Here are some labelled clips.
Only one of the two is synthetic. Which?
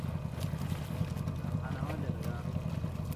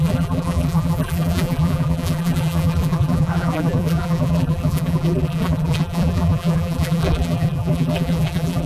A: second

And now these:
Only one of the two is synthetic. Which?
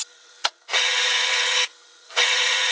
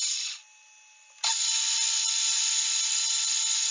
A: first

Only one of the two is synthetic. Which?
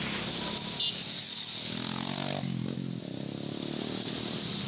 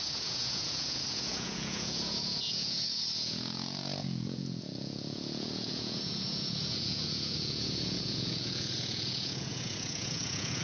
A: second